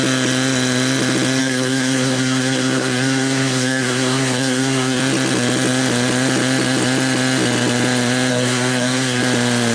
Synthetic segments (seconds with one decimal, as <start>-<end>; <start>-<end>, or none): 1.4-5.0; 8.3-9.2